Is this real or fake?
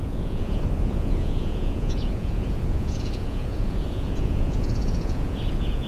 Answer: fake